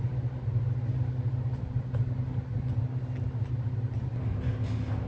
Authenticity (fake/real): real